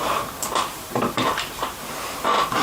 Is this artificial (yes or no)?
yes